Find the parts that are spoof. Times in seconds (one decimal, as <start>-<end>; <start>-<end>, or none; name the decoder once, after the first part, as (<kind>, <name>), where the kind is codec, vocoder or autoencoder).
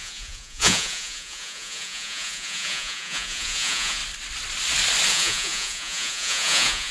0.0-4.0 (vocoder, Vocos); 5.1-6.9